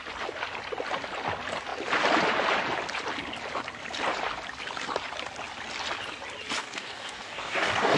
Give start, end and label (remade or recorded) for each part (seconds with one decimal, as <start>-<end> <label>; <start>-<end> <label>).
0.0-6.6 recorded; 6.6-8.0 remade